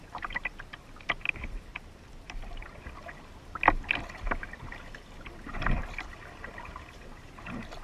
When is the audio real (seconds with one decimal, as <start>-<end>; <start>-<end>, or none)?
0.0-1.7; 2.8-4.7; 7.0-7.8